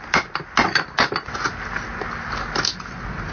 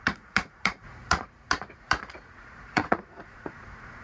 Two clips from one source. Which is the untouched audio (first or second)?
first